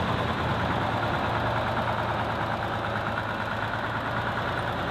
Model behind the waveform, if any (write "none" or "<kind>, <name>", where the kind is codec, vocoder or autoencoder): none